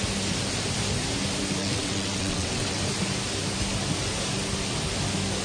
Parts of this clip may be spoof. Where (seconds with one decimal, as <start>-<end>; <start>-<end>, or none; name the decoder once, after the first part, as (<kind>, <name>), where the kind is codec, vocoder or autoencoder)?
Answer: 1.6-2.8 (vocoder, WaveNeXt)